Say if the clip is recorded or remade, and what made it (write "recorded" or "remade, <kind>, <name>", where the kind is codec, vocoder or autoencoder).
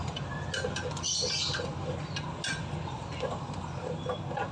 recorded